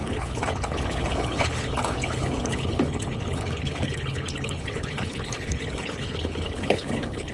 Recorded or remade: remade